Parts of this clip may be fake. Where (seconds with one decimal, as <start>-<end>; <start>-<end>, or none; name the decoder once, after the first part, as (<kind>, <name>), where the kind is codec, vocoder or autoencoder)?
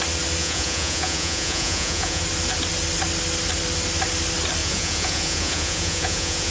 0.4-2.2 (vocoder, Vocos); 4.6-6.5